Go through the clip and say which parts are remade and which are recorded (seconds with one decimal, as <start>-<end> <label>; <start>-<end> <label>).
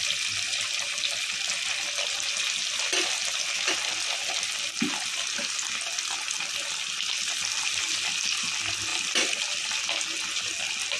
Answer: 0.0-11.0 recorded